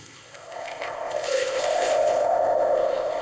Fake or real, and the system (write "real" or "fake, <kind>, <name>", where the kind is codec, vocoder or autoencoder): fake, codec, ZipCodec